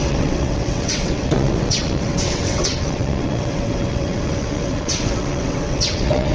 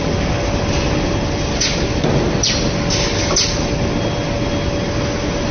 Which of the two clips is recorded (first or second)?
second